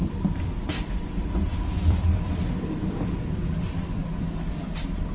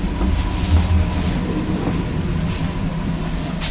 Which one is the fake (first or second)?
first